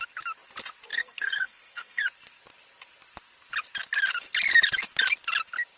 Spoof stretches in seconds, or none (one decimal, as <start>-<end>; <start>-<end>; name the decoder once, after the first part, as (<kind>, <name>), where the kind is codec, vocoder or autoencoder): 0.9-2.0 (codec, SNAC)